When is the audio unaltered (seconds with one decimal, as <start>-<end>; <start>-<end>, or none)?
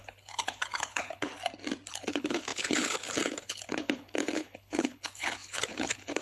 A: 1.3-1.9